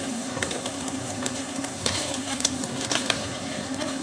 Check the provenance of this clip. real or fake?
fake